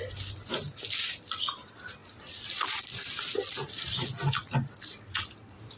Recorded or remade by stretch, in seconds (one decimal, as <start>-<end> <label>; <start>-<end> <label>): 0.0-5.8 recorded